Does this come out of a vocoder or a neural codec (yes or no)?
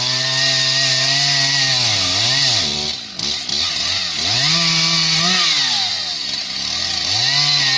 no